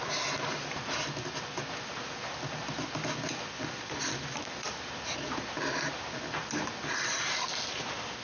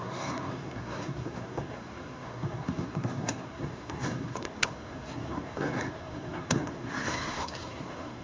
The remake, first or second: second